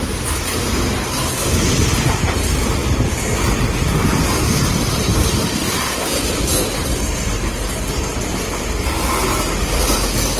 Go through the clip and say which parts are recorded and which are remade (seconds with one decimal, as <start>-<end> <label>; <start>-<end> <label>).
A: 0.0-10.4 recorded